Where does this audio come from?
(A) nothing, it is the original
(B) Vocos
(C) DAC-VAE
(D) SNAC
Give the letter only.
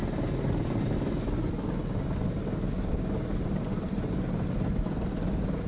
A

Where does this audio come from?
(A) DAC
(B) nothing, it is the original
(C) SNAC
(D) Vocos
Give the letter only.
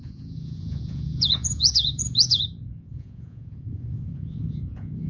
D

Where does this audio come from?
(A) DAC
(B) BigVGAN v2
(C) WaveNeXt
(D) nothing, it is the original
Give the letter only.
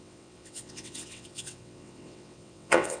C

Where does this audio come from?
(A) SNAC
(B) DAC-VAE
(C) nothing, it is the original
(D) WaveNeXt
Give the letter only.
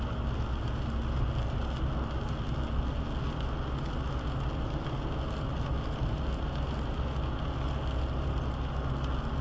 C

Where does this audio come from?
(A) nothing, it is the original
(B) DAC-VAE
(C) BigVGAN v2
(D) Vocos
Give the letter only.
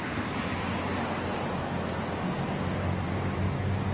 A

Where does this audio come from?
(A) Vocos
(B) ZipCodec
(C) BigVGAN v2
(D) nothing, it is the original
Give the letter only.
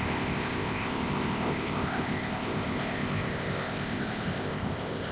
B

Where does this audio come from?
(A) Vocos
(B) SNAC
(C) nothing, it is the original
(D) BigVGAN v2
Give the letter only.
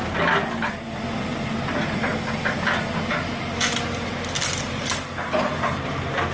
C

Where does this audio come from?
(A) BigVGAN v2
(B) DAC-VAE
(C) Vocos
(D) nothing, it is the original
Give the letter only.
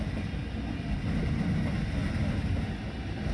D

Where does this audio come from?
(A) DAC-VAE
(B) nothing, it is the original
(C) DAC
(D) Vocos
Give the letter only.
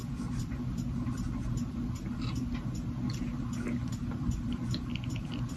B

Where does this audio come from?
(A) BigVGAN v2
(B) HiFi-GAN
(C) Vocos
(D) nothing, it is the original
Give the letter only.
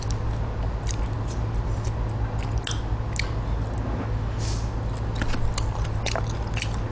D